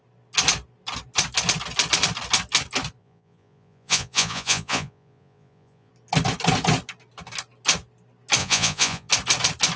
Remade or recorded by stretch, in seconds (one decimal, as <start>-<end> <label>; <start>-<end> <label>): 0.0-3.0 recorded; 3.0-5.9 remade; 5.9-8.4 recorded; 8.4-9.1 remade; 9.1-9.8 recorded